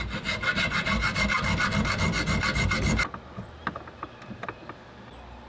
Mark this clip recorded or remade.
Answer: recorded